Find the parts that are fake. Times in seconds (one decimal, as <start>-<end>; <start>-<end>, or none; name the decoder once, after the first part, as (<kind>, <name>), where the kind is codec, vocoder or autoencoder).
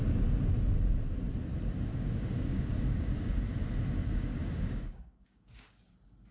1.9-3.1 (codec, DAC); 4.0-5.8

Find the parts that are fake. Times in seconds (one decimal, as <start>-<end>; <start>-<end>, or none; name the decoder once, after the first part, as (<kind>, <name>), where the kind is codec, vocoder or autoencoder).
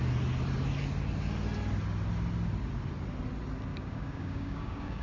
3.7-5.0 (codec, DAC)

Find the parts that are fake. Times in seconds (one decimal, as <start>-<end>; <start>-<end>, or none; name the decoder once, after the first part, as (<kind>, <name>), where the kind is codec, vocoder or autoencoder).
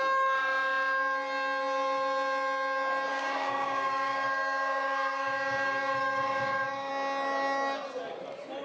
3.1-6.9 (codec, DAC)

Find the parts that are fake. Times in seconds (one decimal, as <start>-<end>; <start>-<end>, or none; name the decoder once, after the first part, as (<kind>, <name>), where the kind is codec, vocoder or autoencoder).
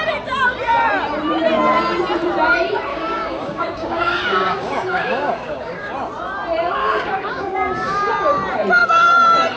2.9-5.9 (codec, DAC); 6.8-8.1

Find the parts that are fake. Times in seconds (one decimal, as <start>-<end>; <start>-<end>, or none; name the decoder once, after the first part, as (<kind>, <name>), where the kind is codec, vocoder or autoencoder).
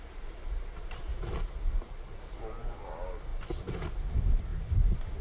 none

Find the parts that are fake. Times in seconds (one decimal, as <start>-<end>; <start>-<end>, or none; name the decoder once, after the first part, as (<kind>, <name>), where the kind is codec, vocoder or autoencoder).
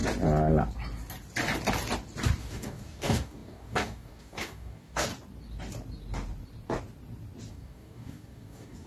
2.4-5.1 (codec, DAC); 7.5-8.9